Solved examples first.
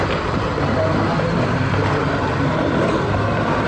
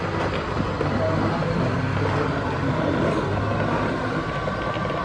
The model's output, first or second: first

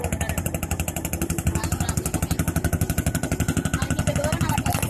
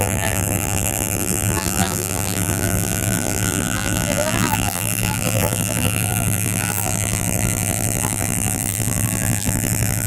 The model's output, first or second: second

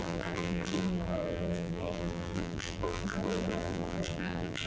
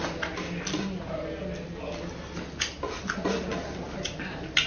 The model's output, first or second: first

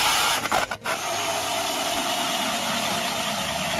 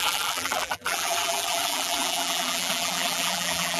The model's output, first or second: second